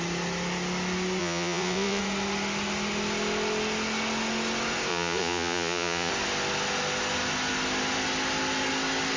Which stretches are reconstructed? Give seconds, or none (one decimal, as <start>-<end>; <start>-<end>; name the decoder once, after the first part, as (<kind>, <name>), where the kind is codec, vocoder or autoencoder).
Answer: 1.2-2.0 (vocoder, Vocos); 4.9-6.1